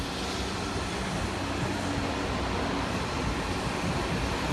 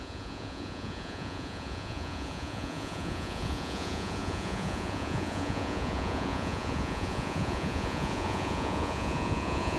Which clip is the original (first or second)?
first